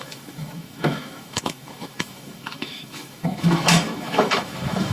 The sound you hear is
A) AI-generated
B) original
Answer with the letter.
A